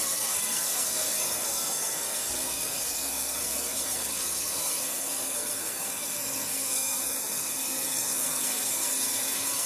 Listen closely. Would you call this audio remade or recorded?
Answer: remade